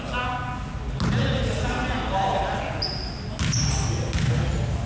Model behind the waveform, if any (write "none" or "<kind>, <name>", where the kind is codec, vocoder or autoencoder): none